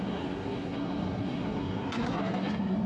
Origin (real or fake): fake